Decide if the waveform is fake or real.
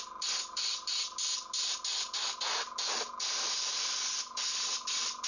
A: real